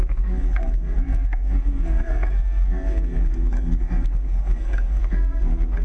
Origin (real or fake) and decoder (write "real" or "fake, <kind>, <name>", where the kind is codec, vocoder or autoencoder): fake, codec, SNAC